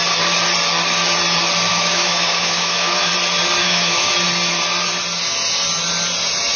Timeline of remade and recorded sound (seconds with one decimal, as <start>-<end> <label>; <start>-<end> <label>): 0.0-1.7 recorded; 1.7-3.1 remade; 3.1-3.6 recorded; 3.6-4.1 remade; 4.1-6.6 recorded

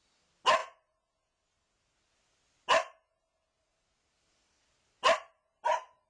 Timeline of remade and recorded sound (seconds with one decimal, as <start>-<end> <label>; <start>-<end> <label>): 0.0-6.1 recorded

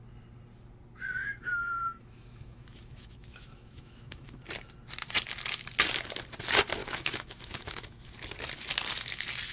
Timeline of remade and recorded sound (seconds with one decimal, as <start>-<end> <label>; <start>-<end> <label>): 0.0-1.2 recorded; 1.2-4.4 remade; 4.4-6.8 recorded; 6.8-8.1 remade; 8.1-9.5 recorded

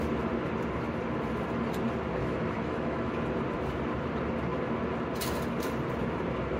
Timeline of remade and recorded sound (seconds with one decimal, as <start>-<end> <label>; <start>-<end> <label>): 0.0-2.2 recorded; 2.2-3.1 remade; 3.1-6.6 recorded

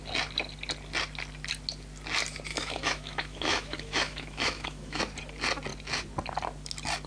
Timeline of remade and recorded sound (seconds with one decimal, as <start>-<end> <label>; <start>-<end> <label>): 0.0-2.5 recorded; 2.5-5.0 remade; 5.0-7.1 recorded

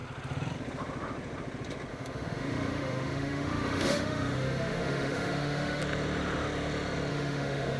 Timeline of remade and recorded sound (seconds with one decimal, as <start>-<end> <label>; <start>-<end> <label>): 0.0-1.9 recorded; 1.9-5.8 remade; 5.8-7.1 recorded; 7.1-7.8 remade